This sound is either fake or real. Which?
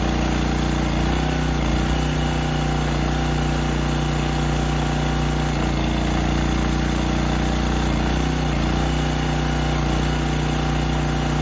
real